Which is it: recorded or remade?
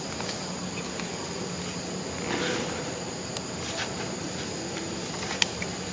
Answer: recorded